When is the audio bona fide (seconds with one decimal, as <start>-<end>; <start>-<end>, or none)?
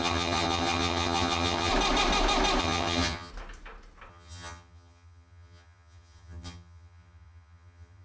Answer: 1.7-2.6; 3.3-4.1